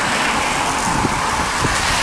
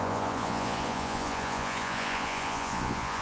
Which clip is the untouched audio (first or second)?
first